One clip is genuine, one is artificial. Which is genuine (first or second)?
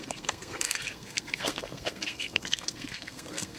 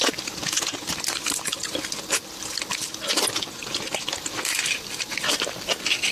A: second